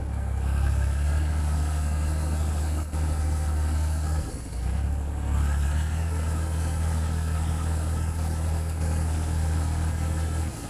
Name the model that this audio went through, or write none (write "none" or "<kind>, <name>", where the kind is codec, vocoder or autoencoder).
codec, SNAC